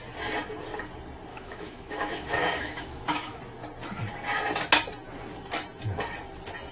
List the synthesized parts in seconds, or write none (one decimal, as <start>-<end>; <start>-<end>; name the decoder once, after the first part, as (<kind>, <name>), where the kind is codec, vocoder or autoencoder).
1.3-3.4 (autoencoder, DAC-VAE)